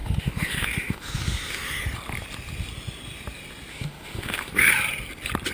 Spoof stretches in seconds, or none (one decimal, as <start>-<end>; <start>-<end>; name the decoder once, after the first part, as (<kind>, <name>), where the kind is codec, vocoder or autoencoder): 0.0-1.8 (autoencoder, DAC-VAE); 3.7-4.7